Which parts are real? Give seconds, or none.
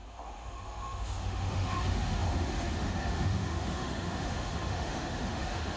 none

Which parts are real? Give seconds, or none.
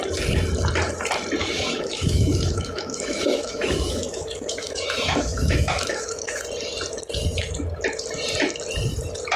0.0-1.4; 6.4-9.4